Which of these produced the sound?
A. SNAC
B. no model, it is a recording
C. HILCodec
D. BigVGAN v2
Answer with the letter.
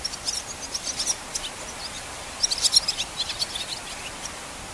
B